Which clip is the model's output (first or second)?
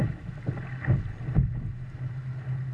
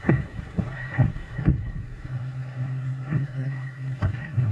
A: second